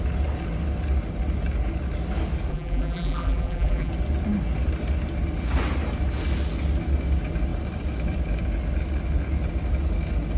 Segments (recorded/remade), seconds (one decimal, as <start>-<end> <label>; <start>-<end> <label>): 0.0-2.5 recorded; 2.5-3.9 remade; 3.9-10.4 recorded